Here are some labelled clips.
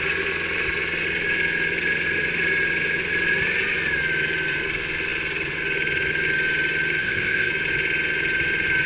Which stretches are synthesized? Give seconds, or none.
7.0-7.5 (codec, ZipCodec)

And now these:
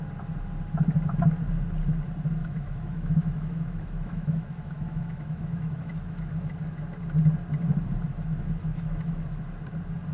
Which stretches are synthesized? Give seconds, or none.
2.4-6.2 (autoencoder, DAC-VAE); 8.7-9.2